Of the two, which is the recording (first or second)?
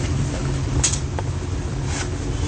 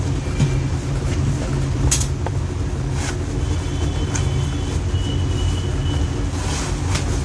second